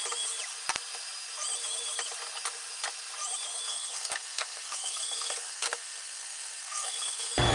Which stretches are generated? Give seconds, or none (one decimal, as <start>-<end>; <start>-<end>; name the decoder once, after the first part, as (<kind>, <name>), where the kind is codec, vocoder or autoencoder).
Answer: 3.7-7.5 (codec, SNAC)